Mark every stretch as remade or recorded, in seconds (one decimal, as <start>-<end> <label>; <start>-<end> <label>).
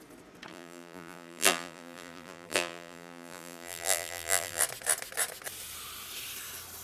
0.0-0.5 recorded; 0.5-4.6 remade; 4.6-6.8 recorded